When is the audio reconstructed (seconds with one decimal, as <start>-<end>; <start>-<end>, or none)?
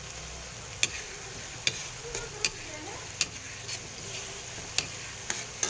none